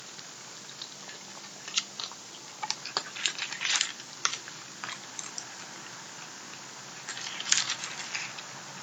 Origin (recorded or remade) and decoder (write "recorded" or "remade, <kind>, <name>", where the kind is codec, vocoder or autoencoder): recorded